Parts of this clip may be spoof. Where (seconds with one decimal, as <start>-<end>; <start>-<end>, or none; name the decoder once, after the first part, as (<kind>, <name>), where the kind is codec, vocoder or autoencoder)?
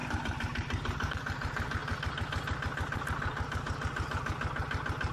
0.0-1.8 (vocoder, BigVGAN v2)